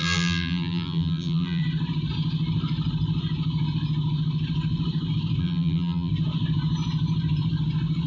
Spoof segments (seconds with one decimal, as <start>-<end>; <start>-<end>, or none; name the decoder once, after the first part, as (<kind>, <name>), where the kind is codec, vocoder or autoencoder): 0.0-1.6 (vocoder, BigVGAN v2); 5.4-6.1